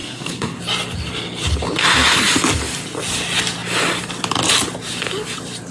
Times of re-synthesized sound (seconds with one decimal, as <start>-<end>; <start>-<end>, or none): 0.0-0.6